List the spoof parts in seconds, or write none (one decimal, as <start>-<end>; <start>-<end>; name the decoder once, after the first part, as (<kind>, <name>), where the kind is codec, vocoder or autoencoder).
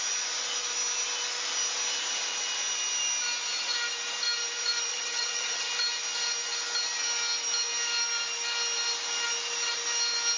4.9-5.7 (vocoder, HiFi-GAN)